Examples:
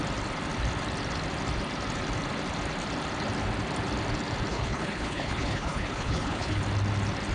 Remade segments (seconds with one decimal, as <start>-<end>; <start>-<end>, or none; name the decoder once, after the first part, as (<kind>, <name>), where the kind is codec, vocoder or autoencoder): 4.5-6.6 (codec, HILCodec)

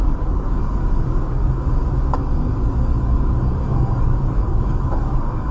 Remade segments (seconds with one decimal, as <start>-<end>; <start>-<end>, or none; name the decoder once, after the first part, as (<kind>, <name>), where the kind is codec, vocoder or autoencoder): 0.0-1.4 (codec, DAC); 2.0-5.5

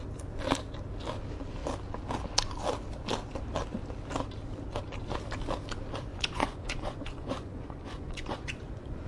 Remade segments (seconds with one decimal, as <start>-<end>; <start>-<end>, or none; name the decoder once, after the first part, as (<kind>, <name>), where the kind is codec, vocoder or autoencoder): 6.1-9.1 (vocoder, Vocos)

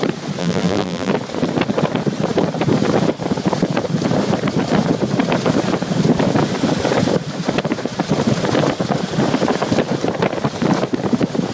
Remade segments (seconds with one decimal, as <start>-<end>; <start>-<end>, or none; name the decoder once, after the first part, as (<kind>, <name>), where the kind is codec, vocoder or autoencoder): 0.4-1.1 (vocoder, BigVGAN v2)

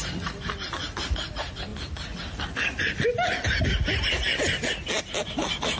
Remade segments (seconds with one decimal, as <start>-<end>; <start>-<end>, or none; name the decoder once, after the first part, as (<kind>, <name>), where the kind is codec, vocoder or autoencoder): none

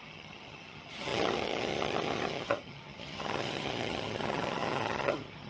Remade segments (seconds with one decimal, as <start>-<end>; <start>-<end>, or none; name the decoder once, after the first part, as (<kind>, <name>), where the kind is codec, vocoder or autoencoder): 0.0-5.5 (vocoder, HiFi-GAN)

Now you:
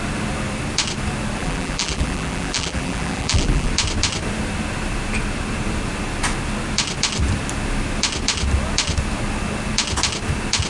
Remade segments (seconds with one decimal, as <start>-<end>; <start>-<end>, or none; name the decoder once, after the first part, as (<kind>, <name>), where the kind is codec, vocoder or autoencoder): 1.4-3.7 (vocoder, BigVGAN v2)

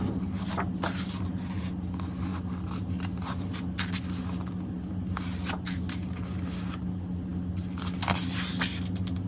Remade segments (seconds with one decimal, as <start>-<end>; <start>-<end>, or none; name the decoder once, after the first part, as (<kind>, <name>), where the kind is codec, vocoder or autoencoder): none